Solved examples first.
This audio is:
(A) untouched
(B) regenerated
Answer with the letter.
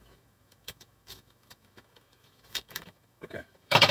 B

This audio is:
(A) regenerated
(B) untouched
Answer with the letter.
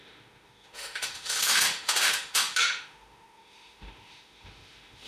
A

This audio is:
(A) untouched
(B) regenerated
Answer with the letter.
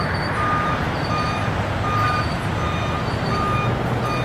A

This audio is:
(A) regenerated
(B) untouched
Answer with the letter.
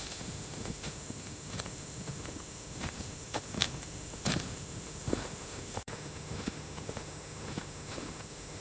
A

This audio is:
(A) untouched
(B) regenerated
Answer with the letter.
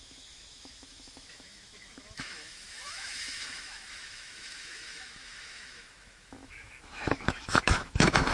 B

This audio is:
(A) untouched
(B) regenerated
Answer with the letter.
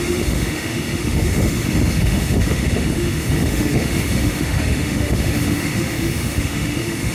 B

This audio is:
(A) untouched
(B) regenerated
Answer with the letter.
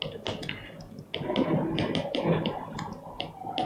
A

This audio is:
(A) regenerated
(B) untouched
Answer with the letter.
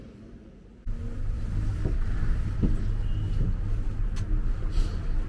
B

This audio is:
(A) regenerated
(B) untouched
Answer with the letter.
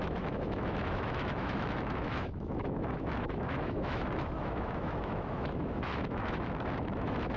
A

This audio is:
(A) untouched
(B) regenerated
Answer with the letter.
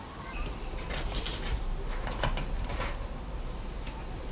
A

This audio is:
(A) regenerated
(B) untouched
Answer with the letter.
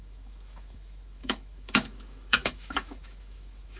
A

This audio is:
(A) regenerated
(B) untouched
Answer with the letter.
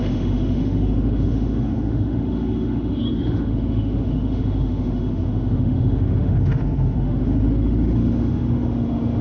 A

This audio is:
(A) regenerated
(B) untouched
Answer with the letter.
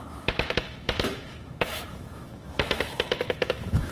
A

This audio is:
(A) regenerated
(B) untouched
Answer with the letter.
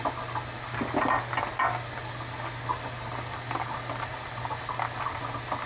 B